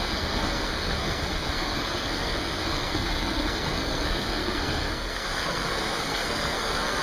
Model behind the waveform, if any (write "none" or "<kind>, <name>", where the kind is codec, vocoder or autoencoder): codec, SNAC